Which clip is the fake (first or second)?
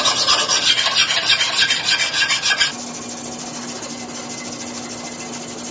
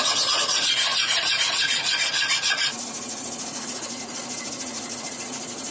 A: second